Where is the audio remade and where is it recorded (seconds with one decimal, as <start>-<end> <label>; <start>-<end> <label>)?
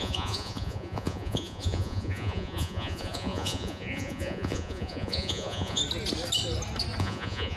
0.0-5.8 remade; 5.8-7.0 recorded; 7.0-7.6 remade